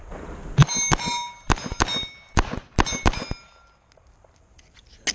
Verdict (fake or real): real